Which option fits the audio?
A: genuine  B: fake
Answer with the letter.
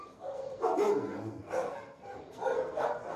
B